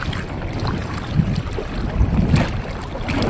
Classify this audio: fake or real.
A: real